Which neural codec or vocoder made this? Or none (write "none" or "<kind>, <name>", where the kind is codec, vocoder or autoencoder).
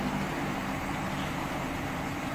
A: none